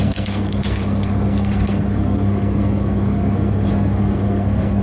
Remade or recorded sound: remade